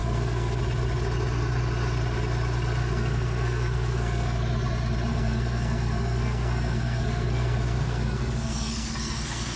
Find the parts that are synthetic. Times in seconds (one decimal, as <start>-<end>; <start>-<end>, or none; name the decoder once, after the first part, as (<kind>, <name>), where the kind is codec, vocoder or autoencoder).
0.0-0.6 (codec, SNAC); 2.8-4.4; 5.1-9.6